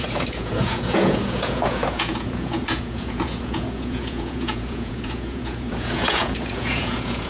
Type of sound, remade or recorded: remade